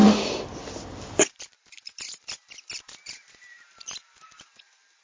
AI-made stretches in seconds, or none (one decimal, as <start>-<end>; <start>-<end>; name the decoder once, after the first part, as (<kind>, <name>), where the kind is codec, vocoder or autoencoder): none

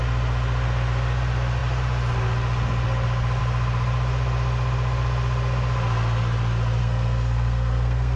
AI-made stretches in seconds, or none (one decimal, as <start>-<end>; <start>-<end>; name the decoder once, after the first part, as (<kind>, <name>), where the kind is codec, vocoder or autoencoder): 6.8-8.2 (codec, SNAC)

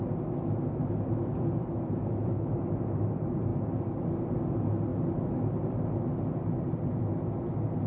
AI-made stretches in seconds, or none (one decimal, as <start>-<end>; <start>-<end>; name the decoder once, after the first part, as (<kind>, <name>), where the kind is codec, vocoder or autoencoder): none

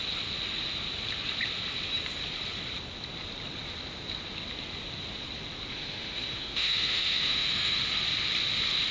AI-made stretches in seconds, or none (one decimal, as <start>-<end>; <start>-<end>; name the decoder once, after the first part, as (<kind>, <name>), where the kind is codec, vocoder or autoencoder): 5.7-7.8 (autoencoder, DAC-VAE)

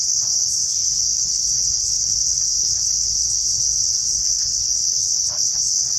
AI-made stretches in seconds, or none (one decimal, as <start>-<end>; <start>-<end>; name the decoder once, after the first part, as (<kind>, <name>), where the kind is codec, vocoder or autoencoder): 0.0-6.0 (codec, HILCodec)

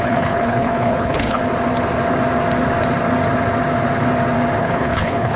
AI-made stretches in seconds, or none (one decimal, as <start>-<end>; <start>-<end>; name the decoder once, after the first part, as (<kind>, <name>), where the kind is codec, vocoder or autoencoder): 0.0-1.4 (codec, HILCodec); 4.6-5.4

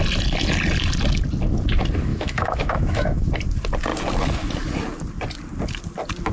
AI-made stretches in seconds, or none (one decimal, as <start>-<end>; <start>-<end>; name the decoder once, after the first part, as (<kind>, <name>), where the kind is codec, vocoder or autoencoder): 2.1-3.3 (autoencoder, DAC-VAE)

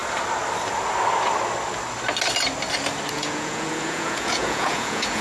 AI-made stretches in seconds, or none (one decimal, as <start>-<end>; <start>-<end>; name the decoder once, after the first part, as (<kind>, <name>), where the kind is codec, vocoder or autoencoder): 3.1-5.2 (vocoder, Vocos)